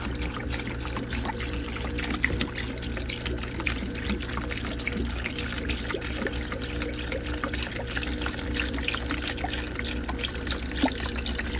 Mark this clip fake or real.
real